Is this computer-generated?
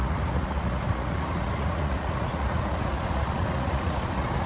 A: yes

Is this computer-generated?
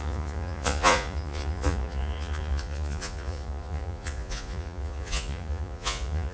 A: yes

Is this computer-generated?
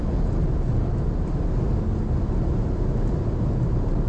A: no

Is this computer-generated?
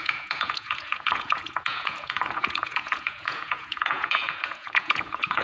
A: yes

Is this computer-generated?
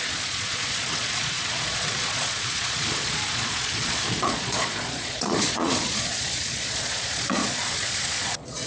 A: yes